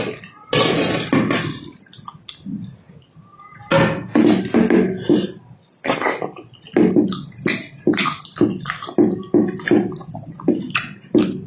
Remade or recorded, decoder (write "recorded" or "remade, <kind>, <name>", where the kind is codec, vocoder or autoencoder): recorded